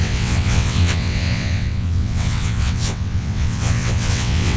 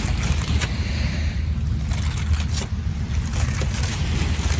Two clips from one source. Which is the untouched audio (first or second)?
second